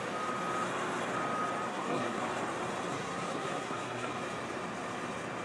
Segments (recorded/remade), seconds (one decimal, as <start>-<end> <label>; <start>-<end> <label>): 0.0-1.7 recorded; 1.7-2.2 remade; 2.2-2.9 recorded; 2.9-4.1 remade; 4.1-5.4 recorded